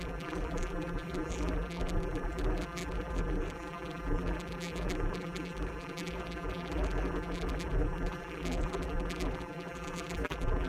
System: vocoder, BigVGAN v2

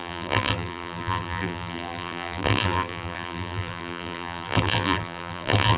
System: vocoder, BigVGAN v2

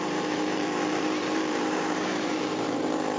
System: vocoder, BigVGAN v2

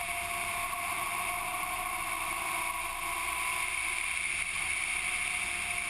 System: none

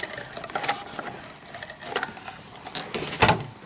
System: none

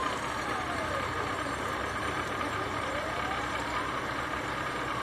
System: vocoder, BigVGAN v2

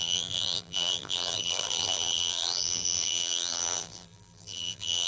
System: vocoder, BigVGAN v2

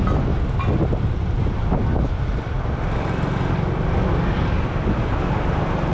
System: none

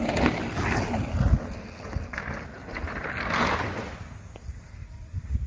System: none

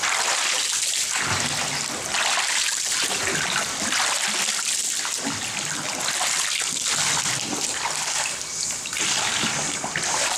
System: none